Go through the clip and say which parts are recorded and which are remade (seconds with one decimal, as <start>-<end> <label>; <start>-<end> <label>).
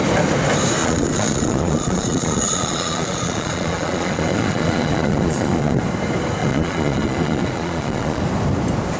0.0-0.8 recorded; 0.8-5.8 remade; 5.8-6.4 recorded; 6.4-8.2 remade; 8.2-9.0 recorded